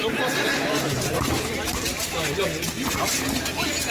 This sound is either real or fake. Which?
real